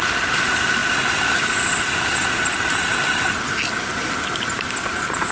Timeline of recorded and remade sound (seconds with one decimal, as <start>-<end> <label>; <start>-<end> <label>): 0.0-5.3 recorded